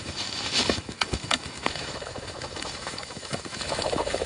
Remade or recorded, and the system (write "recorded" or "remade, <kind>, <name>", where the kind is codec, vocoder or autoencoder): remade, autoencoder, DAC-VAE